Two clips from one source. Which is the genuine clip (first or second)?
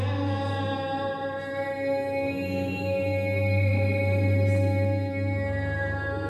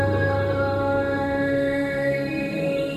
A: first